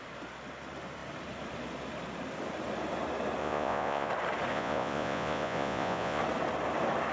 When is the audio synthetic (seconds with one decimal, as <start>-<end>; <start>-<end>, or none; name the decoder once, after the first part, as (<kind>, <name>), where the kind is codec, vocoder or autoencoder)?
3.4-4.1 (vocoder, Vocos); 4.5-6.2